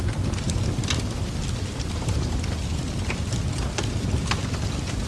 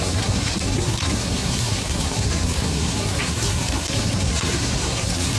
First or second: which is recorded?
first